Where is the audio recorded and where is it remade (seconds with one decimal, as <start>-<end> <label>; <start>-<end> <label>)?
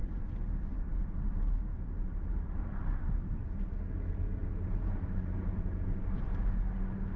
0.0-4.4 recorded; 4.4-6.4 remade; 6.4-7.2 recorded